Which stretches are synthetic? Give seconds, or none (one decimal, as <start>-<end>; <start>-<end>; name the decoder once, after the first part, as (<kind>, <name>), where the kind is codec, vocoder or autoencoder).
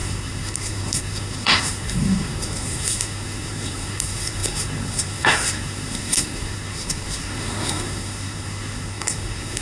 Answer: 0.0-9.6 (codec, SNAC)